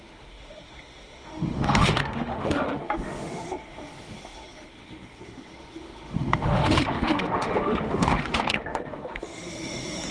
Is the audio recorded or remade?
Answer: remade